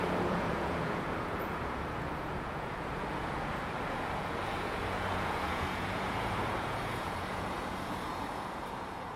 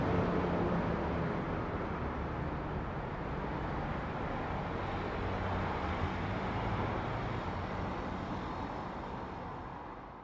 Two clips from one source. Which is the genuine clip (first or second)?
second